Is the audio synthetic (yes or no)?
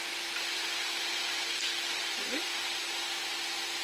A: no